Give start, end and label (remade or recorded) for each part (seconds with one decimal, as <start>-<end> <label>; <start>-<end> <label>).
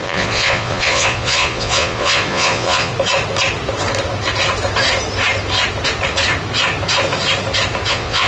0.0-2.9 remade; 2.9-7.9 recorded; 7.9-8.3 remade